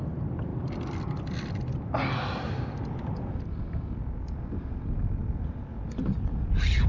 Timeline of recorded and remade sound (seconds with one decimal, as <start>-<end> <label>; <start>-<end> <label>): 0.0-6.9 recorded